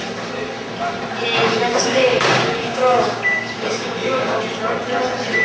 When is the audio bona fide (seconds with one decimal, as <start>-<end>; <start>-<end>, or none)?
0.0-1.7; 4.4-5.4